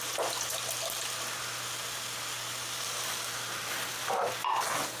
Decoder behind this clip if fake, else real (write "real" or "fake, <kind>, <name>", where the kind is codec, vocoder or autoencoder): real